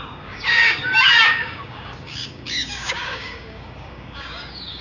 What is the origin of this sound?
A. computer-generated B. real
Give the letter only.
A